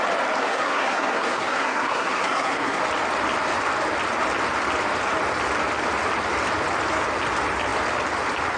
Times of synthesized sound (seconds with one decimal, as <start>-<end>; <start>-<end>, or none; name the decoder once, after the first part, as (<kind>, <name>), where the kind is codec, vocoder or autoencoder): 0.4-2.8 (codec, SNAC)